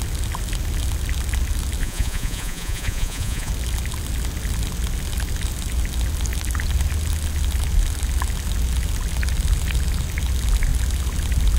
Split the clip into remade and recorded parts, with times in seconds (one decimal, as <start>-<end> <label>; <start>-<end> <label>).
0.0-1.8 recorded; 1.8-3.5 remade; 3.5-11.6 recorded